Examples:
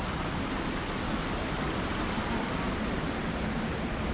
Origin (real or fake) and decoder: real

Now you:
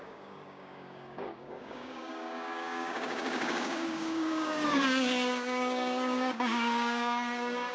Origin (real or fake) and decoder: fake, codec, DAC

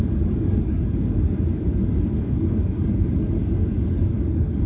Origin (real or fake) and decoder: fake, codec, DAC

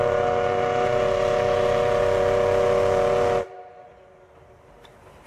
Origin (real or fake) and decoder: real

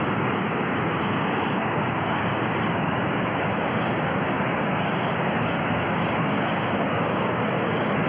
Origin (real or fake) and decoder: fake, codec, DAC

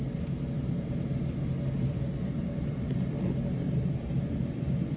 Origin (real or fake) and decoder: real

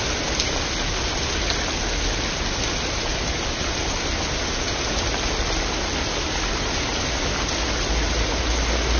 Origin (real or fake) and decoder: real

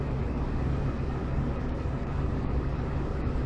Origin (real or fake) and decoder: fake, codec, DAC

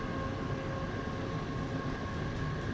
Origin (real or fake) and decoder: real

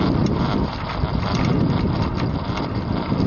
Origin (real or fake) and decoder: real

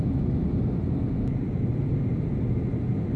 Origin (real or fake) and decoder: real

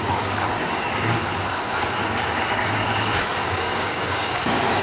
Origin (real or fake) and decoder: fake, codec, DAC